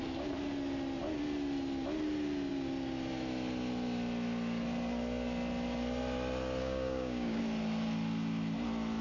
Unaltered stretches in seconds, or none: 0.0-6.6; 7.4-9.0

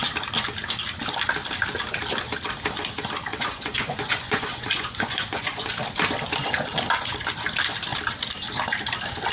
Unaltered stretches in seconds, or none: 0.0-3.3; 5.7-9.3